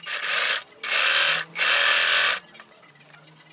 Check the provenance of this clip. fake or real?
real